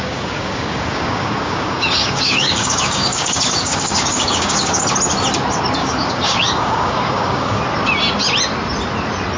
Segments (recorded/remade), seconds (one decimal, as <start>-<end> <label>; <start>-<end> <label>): 0.0-4.8 remade; 4.8-5.8 recorded; 5.8-7.6 remade; 7.6-9.4 recorded